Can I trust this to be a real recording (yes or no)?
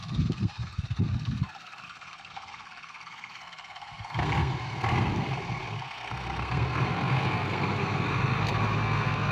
no